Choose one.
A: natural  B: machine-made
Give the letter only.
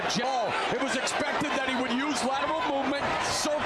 A